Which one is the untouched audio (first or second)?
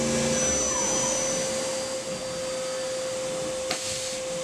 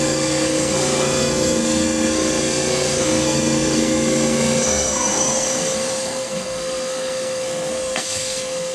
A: first